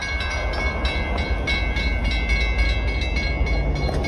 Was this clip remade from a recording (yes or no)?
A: no